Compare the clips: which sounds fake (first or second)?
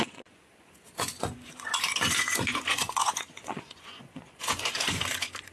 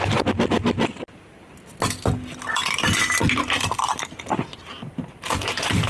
first